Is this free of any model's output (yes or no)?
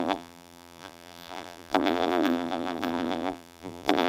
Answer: no